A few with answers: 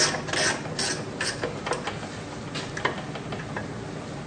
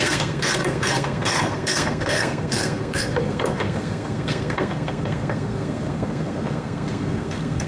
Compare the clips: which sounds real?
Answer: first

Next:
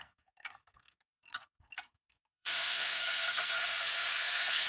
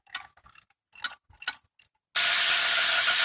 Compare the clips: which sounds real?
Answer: second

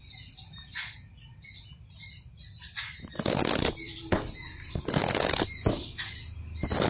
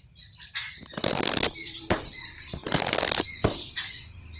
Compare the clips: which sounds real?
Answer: first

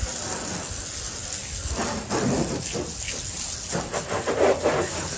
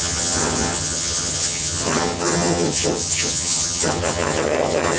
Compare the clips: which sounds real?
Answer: first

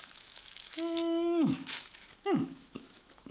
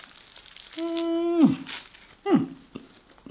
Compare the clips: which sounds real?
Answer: second